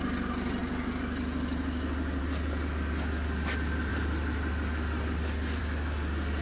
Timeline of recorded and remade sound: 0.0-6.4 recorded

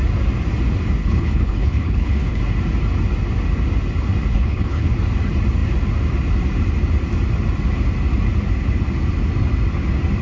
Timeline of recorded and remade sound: 0.0-1.0 recorded; 1.0-2.4 remade; 2.4-4.3 recorded; 4.3-4.9 remade; 4.9-10.2 recorded